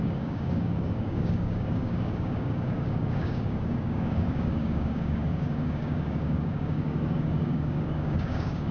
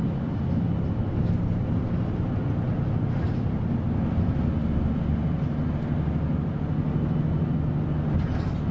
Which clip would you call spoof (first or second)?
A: first